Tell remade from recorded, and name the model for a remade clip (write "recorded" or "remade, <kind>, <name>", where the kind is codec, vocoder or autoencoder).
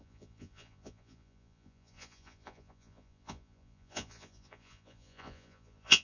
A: remade, vocoder, Vocos